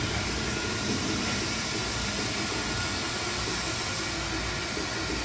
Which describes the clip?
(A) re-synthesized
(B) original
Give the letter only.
B